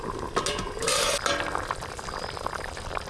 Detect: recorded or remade recorded